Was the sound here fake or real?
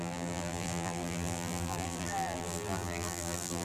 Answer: fake